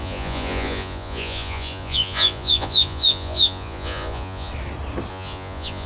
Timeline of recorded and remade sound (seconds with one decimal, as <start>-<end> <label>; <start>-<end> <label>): 0.0-4.5 remade; 4.5-5.1 recorded; 5.1-5.9 remade